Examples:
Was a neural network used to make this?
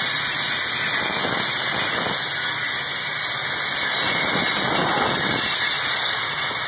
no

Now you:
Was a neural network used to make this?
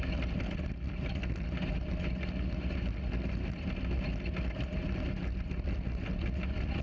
no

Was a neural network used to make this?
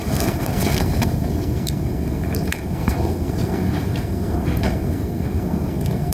yes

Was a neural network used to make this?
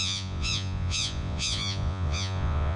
yes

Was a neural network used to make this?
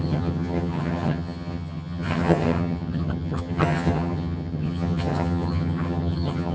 yes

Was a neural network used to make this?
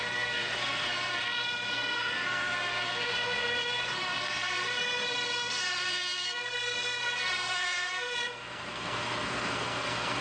yes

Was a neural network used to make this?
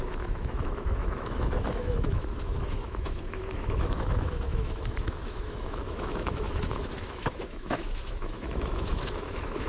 yes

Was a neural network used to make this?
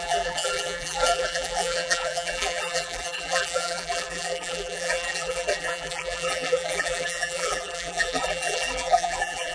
yes